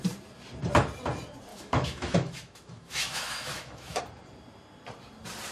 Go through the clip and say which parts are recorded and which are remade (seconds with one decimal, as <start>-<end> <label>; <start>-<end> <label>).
0.0-1.5 recorded; 1.5-4.0 remade; 4.0-5.5 recorded